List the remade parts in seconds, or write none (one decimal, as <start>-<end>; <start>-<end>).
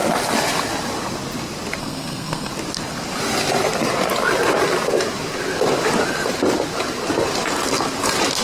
1.8-2.5